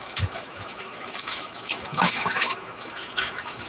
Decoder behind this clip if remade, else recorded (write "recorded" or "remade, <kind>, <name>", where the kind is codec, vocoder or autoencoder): remade, autoencoder, DAC-VAE